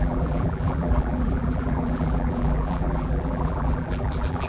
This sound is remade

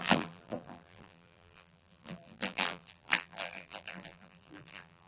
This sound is remade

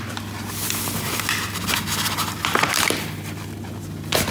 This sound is recorded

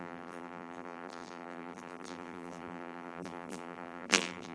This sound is remade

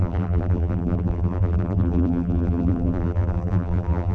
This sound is remade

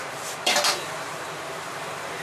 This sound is remade